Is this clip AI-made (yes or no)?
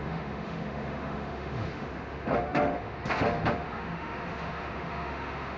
yes